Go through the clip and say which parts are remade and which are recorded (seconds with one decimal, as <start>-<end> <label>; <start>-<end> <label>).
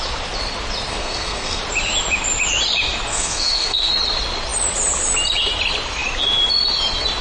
0.0-0.9 recorded; 0.9-1.6 remade; 1.6-3.1 recorded; 3.1-3.9 remade; 3.9-7.2 recorded